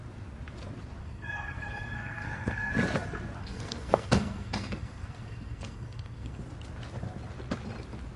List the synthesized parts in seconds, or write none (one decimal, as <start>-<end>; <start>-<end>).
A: 1.0-2.7; 3.4-6.4